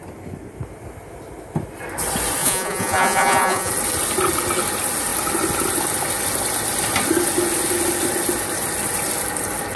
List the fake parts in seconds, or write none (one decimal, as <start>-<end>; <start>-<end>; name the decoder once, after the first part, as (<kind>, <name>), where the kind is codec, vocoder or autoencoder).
2.4-3.7 (vocoder, Vocos)